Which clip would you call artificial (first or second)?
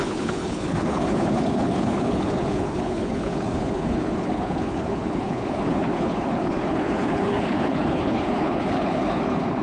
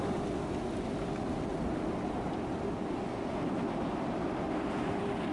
first